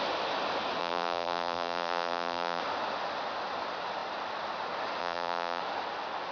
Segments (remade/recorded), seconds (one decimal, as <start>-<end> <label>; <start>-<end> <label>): 0.0-0.8 recorded; 0.8-2.6 remade; 2.6-5.0 recorded; 5.0-5.6 remade; 5.6-6.3 recorded